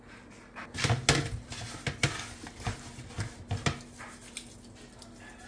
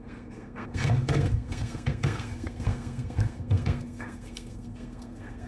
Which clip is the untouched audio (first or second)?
first